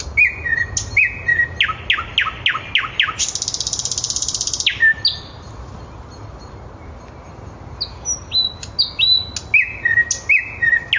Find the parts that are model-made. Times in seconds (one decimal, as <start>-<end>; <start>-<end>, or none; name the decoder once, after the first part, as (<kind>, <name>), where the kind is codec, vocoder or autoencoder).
none